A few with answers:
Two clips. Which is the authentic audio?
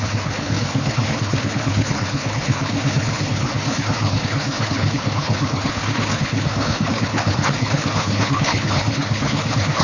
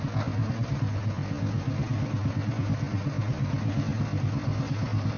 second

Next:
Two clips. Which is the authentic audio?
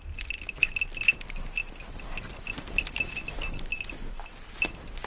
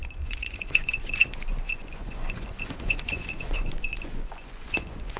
first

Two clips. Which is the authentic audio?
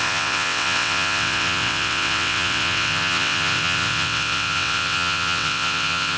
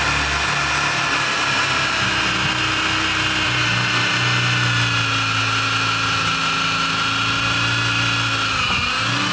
second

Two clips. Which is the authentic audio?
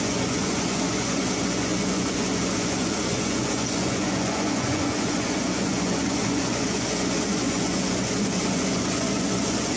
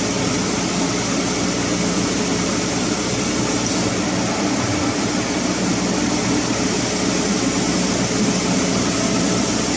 second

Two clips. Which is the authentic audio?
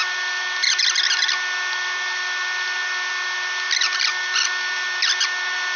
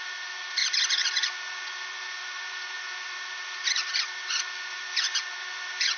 first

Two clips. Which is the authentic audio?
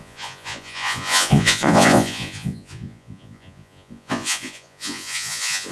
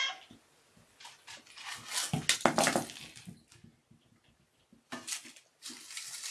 second